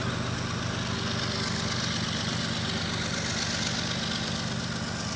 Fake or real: real